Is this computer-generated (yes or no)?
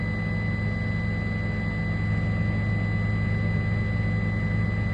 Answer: no